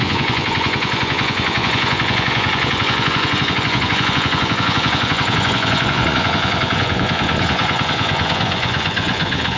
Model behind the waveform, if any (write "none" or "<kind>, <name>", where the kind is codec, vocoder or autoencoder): vocoder, Vocos